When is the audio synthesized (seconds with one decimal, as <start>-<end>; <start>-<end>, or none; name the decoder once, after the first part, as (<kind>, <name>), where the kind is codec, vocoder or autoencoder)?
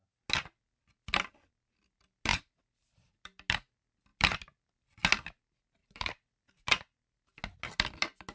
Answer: 2.3-3.1 (vocoder, BigVGAN v2); 5.8-6.4